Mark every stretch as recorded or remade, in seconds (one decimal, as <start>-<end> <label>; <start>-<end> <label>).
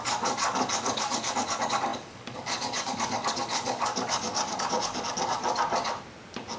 0.0-5.4 remade; 5.4-6.6 recorded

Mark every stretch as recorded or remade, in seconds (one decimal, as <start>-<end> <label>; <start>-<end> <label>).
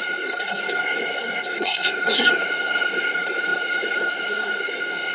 0.0-5.1 remade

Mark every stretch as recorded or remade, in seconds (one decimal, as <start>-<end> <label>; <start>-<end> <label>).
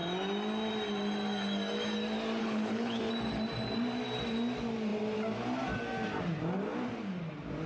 0.0-2.4 recorded; 2.4-3.0 remade; 3.0-7.7 recorded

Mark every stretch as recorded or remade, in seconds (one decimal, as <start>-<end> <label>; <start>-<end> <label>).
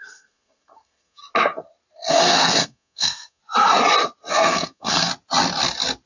0.0-1.2 remade; 1.2-2.1 recorded; 2.1-3.4 remade; 3.4-4.3 recorded; 4.3-5.1 remade; 5.1-6.1 recorded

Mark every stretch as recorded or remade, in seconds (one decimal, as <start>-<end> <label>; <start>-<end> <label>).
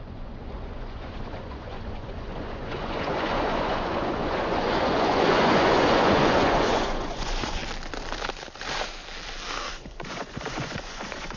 0.0-7.6 remade; 7.6-9.7 recorded; 9.7-11.4 remade